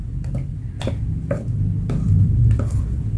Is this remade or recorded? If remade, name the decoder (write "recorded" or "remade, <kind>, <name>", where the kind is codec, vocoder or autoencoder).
recorded